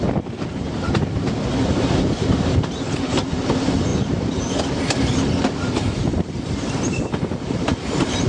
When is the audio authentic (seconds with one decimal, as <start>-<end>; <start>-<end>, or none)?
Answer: 0.0-8.3